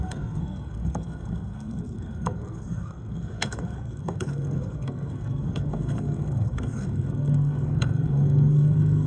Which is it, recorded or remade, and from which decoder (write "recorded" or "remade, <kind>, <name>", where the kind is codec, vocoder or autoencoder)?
remade, codec, SNAC